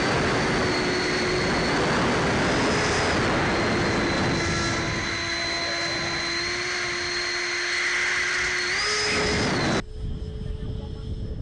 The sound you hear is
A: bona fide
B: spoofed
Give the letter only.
A